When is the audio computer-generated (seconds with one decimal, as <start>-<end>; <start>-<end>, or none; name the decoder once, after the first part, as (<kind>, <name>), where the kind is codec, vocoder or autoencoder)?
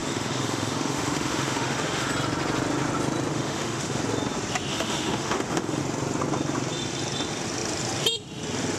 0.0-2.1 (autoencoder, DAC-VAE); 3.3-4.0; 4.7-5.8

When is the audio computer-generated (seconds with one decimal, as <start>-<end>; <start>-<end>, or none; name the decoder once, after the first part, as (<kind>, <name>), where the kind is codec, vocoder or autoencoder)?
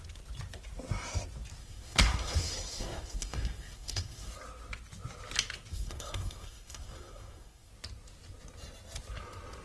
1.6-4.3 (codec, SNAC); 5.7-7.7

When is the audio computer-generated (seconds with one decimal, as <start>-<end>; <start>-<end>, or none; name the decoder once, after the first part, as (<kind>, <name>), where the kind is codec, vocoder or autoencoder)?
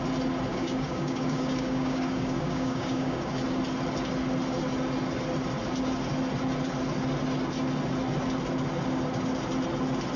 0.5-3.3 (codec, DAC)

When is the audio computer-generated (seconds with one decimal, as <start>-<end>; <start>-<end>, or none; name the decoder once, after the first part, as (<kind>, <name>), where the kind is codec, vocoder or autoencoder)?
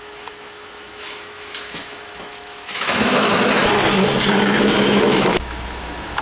0.0-3.6 (autoencoder, DAC-VAE); 4.6-6.2